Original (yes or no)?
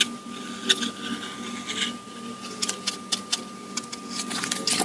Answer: yes